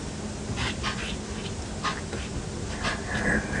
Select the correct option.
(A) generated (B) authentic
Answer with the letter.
B